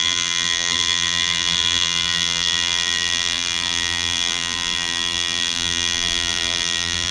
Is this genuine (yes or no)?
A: no